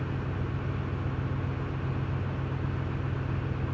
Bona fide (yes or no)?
yes